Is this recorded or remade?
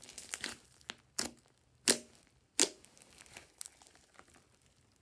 recorded